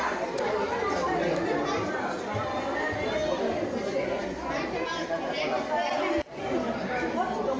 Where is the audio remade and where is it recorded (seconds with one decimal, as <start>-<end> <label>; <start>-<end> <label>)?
0.0-7.6 recorded